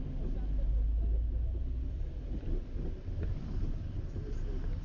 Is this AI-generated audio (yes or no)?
no